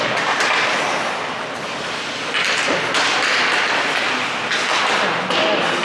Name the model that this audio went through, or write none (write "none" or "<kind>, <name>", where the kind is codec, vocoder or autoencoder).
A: none